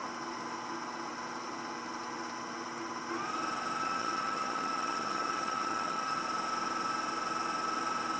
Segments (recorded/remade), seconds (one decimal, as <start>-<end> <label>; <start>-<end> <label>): 0.0-3.8 recorded; 3.8-6.2 remade; 6.2-8.2 recorded